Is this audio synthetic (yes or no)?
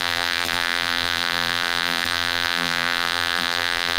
yes